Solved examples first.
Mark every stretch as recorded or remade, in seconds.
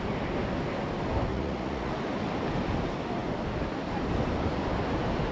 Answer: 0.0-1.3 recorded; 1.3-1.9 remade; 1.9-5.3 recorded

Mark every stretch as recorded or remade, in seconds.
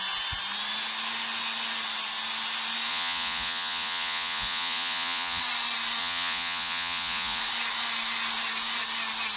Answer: 0.0-2.9 recorded; 2.9-5.4 remade; 5.4-6.0 recorded; 6.0-7.4 remade; 7.4-9.4 recorded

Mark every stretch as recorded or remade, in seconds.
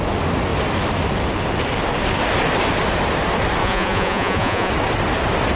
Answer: 0.0-3.6 recorded; 3.6-4.7 remade; 4.7-5.6 recorded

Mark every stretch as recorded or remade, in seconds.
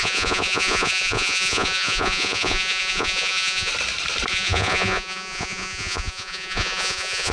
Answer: 0.0-3.7 remade; 3.7-4.3 recorded; 4.3-7.3 remade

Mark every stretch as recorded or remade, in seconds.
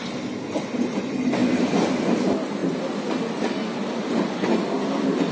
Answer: 0.0-5.3 recorded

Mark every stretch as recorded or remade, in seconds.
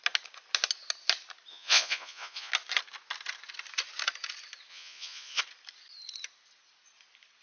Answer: 0.0-1.5 recorded; 1.5-2.5 remade; 2.5-4.7 recorded; 4.7-5.4 remade; 5.4-7.4 recorded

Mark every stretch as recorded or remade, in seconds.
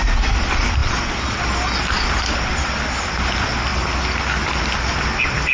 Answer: 0.0-5.5 recorded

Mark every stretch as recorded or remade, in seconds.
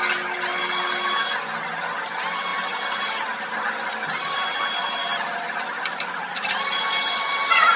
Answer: 0.0-7.8 recorded